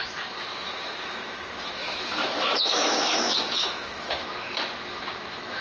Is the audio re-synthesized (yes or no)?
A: yes